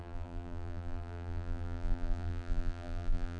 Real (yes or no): no